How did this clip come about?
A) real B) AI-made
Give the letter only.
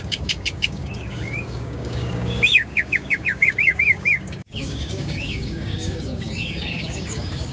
B